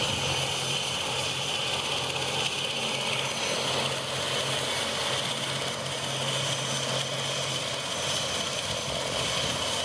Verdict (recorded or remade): recorded